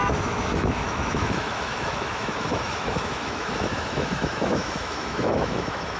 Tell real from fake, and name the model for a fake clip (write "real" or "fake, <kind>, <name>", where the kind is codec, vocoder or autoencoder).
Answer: fake, autoencoder, DAC-VAE